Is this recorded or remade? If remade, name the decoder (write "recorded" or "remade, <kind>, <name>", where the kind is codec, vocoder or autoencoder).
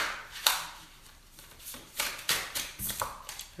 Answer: remade, vocoder, BigVGAN v2